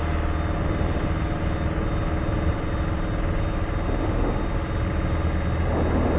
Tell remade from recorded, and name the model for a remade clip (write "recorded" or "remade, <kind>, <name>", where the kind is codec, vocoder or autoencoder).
recorded